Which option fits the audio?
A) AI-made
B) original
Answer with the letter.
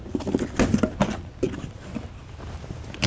B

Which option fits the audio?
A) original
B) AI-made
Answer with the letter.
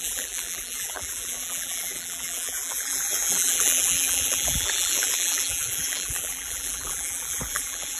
B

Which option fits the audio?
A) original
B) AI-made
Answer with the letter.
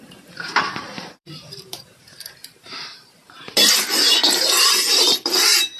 B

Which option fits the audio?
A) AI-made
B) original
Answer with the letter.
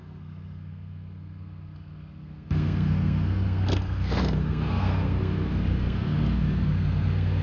A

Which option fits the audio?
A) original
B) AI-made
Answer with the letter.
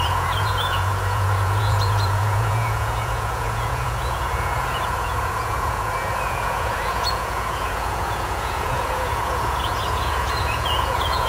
B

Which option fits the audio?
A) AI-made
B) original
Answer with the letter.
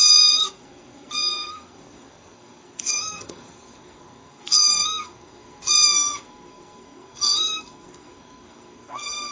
A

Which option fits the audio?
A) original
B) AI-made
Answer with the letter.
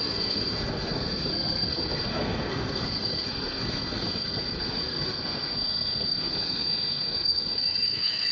B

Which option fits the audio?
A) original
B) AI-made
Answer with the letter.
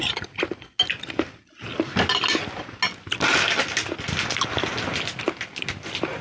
A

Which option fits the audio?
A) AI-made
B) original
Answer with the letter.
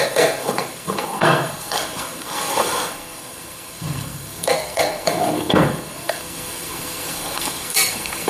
A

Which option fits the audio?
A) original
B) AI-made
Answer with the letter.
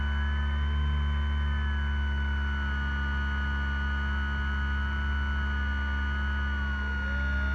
A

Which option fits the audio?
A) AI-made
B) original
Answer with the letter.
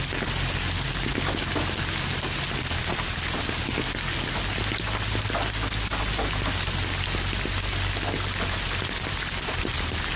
B